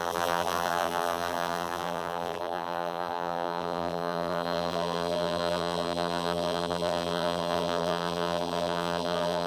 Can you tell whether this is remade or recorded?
remade